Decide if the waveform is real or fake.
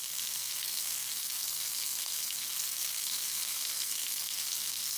fake